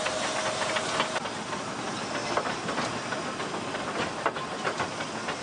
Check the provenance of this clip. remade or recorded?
recorded